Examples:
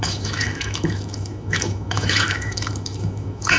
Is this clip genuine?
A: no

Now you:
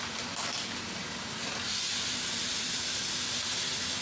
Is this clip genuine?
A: yes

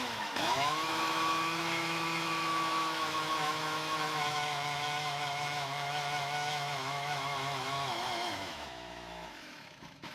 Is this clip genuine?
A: no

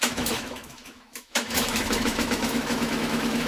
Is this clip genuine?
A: no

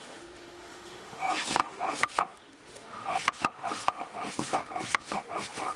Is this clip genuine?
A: no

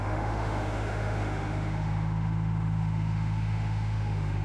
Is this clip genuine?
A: no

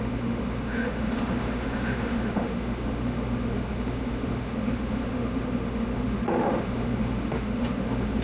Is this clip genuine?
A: no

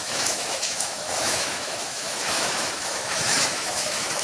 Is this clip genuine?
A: no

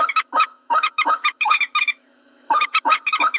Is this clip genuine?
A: no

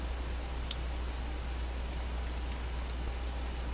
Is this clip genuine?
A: yes